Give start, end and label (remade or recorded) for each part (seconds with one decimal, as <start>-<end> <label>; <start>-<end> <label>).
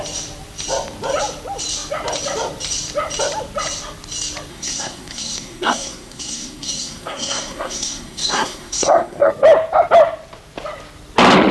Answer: 0.0-4.5 recorded; 4.5-9.3 remade; 9.3-11.5 recorded